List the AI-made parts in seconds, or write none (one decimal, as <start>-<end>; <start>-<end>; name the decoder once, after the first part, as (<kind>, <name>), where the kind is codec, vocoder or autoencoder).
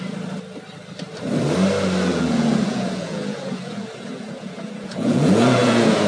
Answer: 2.1-6.1 (vocoder, Vocos)